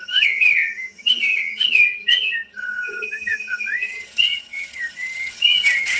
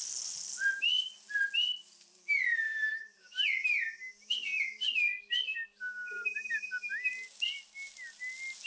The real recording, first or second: second